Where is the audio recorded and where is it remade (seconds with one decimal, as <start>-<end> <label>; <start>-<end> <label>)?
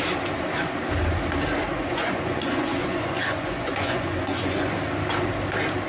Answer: 0.0-1.7 recorded; 1.7-4.7 remade; 4.7-5.9 recorded